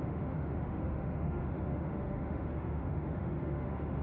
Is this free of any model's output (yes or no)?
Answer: no